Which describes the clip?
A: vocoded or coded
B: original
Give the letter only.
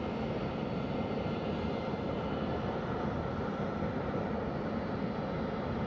B